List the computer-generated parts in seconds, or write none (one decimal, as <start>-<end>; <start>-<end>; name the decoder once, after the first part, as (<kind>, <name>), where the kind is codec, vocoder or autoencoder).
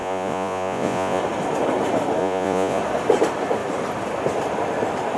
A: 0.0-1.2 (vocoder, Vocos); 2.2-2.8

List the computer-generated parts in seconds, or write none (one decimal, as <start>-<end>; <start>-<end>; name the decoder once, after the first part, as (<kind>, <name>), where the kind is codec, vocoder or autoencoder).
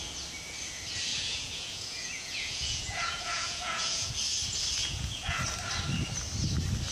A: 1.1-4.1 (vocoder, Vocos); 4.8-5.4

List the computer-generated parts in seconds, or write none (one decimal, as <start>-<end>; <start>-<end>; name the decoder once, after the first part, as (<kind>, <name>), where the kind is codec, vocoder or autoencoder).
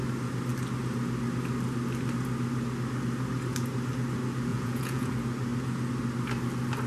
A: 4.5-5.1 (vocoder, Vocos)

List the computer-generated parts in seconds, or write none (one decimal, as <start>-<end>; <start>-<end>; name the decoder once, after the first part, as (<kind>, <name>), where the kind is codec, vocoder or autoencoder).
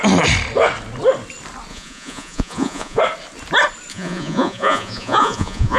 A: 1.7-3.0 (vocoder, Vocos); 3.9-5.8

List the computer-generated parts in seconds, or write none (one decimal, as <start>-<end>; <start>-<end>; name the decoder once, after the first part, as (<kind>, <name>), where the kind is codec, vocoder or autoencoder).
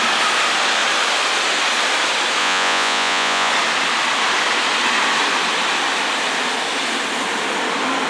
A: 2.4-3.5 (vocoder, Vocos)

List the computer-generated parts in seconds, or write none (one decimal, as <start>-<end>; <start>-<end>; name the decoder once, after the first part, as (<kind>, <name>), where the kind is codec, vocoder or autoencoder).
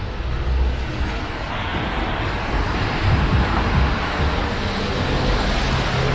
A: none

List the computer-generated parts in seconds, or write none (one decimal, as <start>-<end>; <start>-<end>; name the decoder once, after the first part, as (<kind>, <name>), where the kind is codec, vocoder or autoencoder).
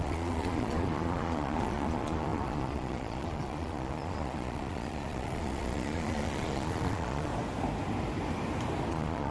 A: 0.0-7.3 (vocoder, Vocos); 8.9-9.3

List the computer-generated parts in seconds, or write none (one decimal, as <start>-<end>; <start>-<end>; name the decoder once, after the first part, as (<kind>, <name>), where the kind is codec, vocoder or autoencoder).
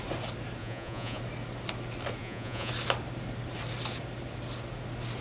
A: 0.6-1.2 (vocoder, Vocos); 2.2-2.7